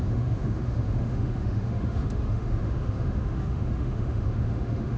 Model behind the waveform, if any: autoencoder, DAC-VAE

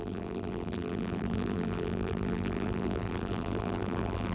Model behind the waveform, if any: vocoder, BigVGAN v2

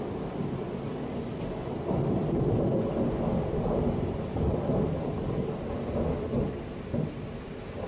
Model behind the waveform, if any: none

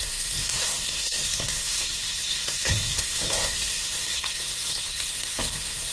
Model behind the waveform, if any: codec, SNAC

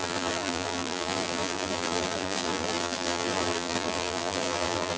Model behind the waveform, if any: vocoder, BigVGAN v2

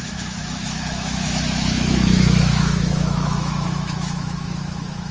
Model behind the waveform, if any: autoencoder, DAC-VAE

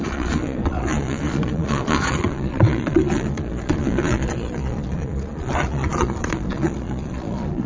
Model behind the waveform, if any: vocoder, Vocos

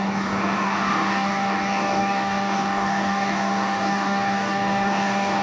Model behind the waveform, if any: codec, DAC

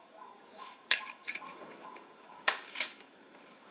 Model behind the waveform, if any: codec, DAC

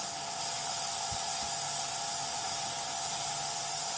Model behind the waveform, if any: none